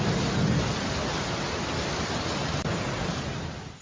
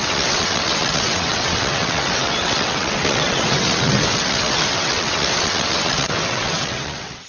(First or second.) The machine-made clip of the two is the second